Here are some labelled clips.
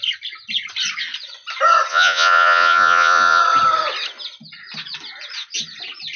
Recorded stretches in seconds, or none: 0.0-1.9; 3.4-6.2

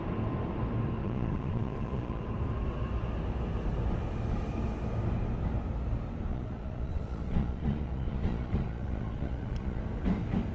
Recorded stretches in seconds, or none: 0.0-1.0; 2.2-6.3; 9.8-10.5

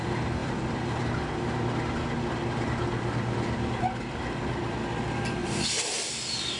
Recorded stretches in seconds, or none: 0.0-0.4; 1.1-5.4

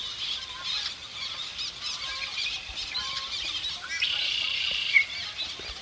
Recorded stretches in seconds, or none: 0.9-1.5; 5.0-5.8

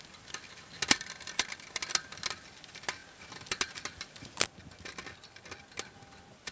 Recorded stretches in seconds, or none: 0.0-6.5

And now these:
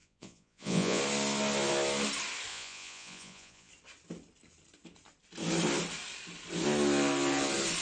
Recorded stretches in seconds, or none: 1.0-2.5; 3.7-7.8